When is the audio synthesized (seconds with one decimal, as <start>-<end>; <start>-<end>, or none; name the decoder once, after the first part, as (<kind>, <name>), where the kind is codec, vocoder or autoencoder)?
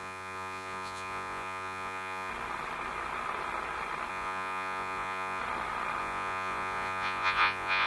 0.0-2.3 (vocoder, Vocos); 4.1-5.4; 6.0-7.9